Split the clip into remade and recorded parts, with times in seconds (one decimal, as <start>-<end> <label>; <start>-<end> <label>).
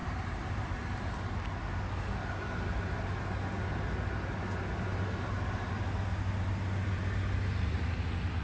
0.0-1.3 remade; 1.3-8.4 recorded